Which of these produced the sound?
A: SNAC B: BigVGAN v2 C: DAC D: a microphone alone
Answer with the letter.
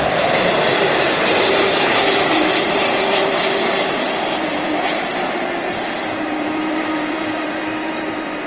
B